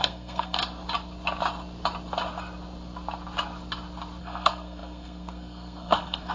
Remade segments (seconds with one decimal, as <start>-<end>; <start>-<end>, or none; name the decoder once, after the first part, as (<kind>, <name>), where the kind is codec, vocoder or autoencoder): 0.0-0.6 (codec, SNAC); 4.2-6.3

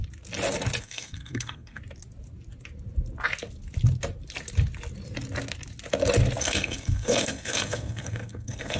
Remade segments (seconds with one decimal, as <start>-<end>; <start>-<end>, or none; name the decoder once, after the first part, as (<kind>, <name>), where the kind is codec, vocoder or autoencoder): 0.8-1.8 (codec, SNAC); 6.4-8.8

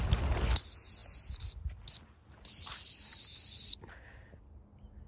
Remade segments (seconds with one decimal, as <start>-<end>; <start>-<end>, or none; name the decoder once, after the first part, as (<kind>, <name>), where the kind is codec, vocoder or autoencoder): none

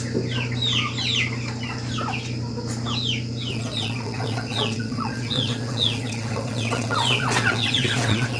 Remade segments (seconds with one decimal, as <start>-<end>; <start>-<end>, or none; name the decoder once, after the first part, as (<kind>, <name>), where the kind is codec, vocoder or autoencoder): 3.5-8.4 (vocoder, WaveNeXt)

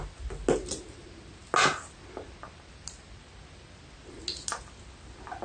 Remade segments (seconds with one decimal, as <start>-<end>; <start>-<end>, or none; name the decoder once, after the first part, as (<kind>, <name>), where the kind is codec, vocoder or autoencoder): none

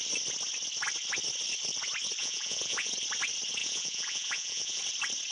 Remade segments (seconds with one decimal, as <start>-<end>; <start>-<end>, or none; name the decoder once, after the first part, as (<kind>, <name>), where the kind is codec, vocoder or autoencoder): 2.2-2.9 (vocoder, Vocos); 3.6-4.8